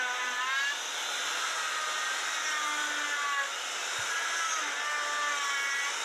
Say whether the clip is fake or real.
real